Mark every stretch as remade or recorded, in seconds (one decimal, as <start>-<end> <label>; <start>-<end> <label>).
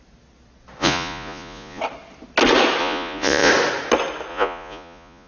0.0-0.8 recorded; 0.8-1.8 remade; 1.8-2.8 recorded; 2.8-3.5 remade; 3.5-4.3 recorded; 4.3-5.3 remade